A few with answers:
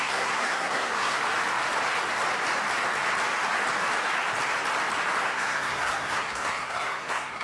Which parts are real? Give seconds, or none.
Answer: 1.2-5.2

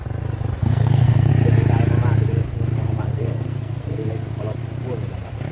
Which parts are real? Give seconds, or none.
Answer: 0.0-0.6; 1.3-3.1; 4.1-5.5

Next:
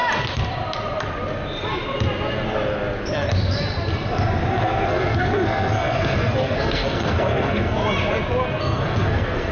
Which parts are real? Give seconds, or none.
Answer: 0.0-4.5; 7.8-8.6

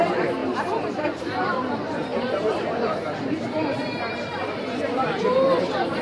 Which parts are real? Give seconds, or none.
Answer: none

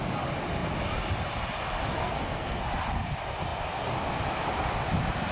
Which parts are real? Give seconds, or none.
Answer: 0.0-2.0; 2.6-5.3

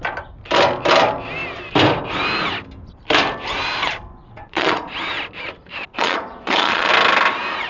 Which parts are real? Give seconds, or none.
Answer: 0.0-4.2; 4.9-5.9; 6.9-7.7

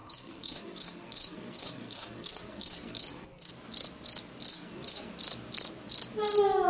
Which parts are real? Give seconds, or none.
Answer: 3.5-4.5; 5.1-6.7

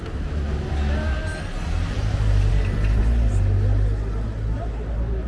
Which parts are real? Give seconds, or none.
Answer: 0.0-5.3